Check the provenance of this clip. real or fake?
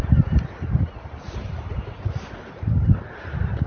fake